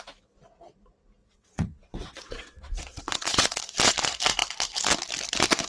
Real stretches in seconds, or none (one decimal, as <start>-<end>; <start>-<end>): 0.0-1.2; 3.6-5.7